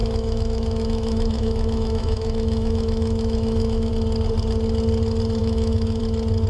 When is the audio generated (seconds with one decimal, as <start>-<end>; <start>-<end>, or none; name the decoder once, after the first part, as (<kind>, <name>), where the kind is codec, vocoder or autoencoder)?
0.0-3.9 (autoencoder, DAC-VAE); 5.4-6.0